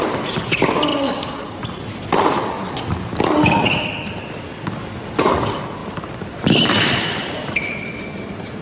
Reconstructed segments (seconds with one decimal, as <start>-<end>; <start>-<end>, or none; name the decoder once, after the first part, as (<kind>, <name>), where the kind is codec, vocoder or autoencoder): 0.9-1.6 (vocoder, BigVGAN v2); 5.8-8.6